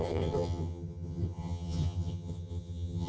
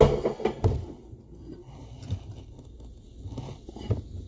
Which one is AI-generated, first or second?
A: first